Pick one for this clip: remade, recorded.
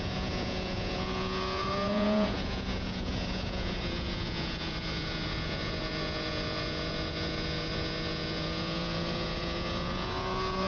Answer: remade